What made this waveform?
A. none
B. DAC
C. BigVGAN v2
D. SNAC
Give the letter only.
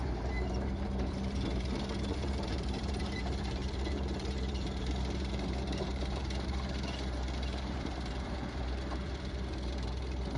C